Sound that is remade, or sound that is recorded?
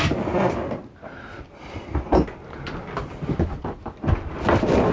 recorded